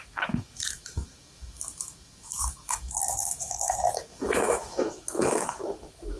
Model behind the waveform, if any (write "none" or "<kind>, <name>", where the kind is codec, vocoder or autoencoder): autoencoder, DAC-VAE